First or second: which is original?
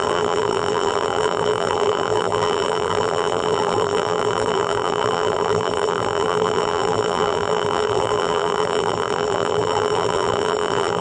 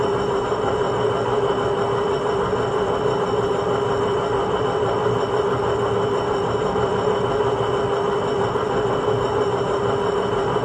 second